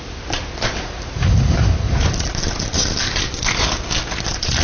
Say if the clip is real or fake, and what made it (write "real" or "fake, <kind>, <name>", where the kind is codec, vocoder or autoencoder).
real